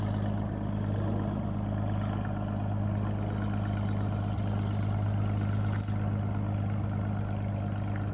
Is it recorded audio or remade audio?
recorded